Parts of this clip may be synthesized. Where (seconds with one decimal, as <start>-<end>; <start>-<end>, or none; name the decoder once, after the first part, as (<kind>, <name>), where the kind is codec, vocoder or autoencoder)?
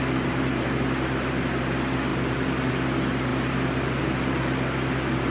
none